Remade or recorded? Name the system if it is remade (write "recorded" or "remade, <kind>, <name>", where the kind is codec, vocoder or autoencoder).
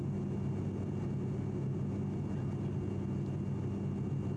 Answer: recorded